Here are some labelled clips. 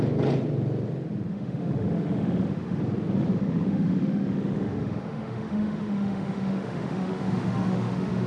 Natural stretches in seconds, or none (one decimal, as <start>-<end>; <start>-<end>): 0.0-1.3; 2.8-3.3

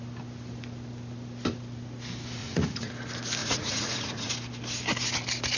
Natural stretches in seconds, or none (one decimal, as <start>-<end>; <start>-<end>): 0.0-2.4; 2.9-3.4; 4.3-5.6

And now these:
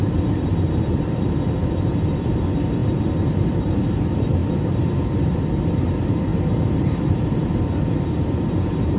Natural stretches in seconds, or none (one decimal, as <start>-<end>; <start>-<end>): none

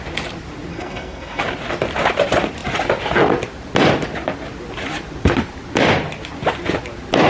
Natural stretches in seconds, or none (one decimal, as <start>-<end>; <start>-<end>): 0.0-0.7; 1.4-7.3